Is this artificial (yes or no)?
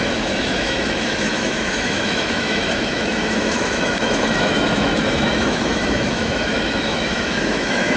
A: yes